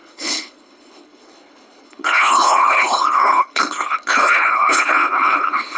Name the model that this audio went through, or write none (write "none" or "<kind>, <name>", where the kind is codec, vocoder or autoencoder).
codec, HILCodec